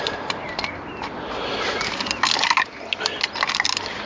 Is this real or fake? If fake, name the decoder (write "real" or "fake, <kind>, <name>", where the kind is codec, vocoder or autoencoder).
real